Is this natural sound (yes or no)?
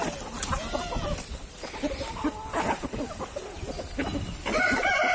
yes